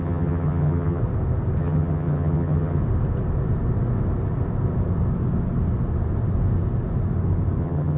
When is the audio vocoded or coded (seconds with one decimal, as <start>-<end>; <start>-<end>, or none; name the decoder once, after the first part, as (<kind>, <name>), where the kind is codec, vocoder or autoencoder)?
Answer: 0.0-1.0 (vocoder, HiFi-GAN); 1.6-2.8; 7.6-8.0